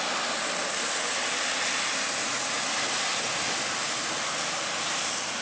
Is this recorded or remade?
recorded